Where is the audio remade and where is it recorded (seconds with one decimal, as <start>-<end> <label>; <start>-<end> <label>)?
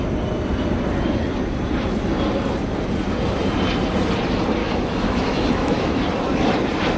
0.0-4.6 recorded; 4.6-6.0 remade; 6.0-7.0 recorded